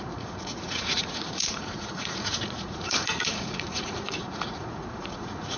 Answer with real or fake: fake